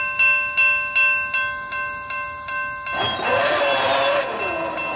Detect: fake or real real